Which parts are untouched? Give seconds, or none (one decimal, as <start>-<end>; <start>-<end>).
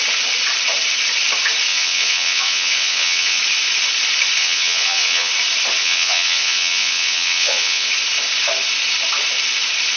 0.0-1.7; 3.4-4.4; 5.3-5.8; 7.9-10.0